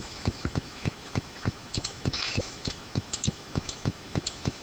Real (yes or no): no